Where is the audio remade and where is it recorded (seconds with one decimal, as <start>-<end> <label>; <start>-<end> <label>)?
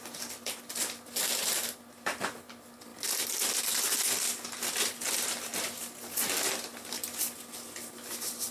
0.0-8.5 recorded